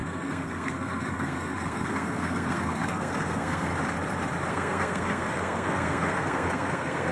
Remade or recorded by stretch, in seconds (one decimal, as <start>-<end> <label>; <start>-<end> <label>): 0.0-3.7 remade; 3.7-4.5 recorded; 4.5-7.1 remade